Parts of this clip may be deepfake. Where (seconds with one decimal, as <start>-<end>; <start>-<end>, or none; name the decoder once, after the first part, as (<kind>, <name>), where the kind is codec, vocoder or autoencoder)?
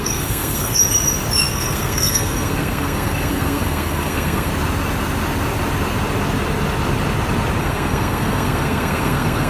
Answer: 0.0-0.8 (codec, SNAC); 1.5-4.5; 7.6-9.5